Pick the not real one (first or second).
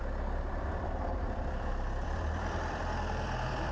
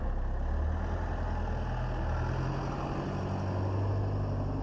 first